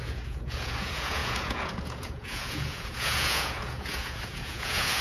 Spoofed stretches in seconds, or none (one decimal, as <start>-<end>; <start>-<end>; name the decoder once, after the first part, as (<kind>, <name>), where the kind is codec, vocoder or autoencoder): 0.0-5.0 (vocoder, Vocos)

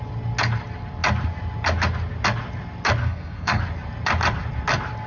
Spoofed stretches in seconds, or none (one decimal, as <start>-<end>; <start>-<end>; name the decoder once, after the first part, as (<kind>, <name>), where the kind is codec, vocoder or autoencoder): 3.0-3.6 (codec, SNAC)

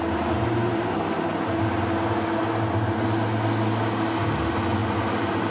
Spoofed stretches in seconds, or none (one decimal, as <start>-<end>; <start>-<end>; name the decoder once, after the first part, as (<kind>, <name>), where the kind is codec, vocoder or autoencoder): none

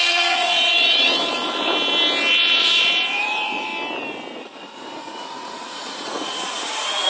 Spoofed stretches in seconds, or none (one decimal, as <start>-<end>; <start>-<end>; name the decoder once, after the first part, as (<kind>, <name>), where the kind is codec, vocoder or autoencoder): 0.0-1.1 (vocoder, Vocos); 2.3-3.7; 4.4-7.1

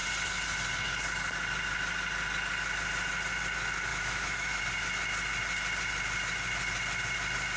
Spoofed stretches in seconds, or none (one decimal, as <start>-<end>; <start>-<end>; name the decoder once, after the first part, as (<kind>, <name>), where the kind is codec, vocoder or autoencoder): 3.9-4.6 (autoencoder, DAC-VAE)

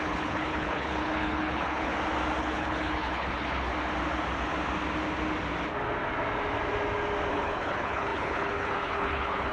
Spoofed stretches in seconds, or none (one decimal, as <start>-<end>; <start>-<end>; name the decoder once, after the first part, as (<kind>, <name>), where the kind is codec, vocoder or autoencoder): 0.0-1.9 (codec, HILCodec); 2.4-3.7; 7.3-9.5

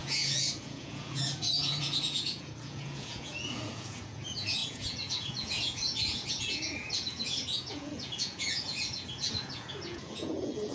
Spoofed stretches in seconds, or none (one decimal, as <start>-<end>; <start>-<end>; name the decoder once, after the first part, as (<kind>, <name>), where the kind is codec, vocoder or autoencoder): 0.0-10.7 (vocoder, Vocos)

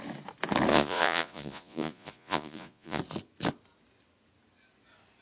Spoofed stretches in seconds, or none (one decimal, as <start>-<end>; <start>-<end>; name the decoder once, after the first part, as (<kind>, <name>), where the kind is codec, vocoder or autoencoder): 0.7-3.0 (vocoder, Vocos)